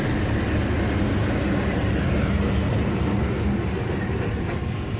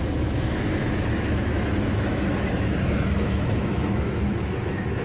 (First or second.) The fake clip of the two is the second